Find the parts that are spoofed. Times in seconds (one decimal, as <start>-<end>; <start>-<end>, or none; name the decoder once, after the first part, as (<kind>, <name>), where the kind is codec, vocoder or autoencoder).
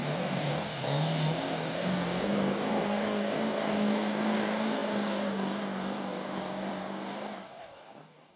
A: 0.0-8.4 (codec, DAC)